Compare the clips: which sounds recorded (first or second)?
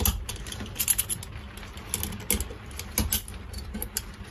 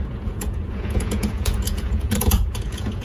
first